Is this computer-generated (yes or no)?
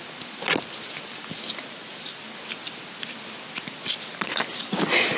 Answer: no